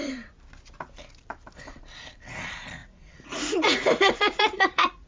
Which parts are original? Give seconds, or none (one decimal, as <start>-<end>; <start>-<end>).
0.0-2.8